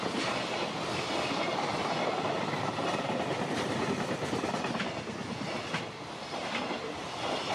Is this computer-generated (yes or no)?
no